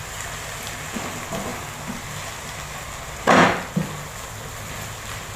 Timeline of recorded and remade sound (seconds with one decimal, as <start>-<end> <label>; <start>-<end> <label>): 0.0-5.4 recorded